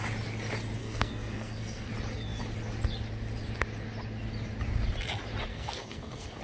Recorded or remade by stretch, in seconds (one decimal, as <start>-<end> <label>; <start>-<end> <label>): 0.0-0.8 recorded; 0.8-1.9 remade; 1.9-5.5 recorded; 5.5-6.4 remade